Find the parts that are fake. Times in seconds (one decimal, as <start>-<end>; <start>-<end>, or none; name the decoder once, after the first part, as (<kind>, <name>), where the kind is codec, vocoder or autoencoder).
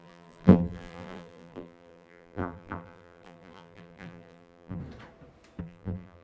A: 0.0-4.8 (vocoder, BigVGAN v2); 5.6-6.2